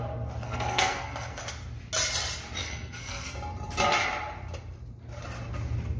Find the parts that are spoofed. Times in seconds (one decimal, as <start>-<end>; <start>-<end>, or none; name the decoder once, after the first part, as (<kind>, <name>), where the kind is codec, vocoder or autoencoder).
0.4-1.4 (codec, SNAC); 2.6-3.3